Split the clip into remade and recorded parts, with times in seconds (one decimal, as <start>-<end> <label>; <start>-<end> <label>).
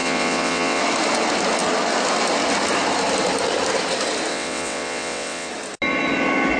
0.0-0.8 remade; 0.8-4.3 recorded; 4.3-5.5 remade; 5.5-6.6 recorded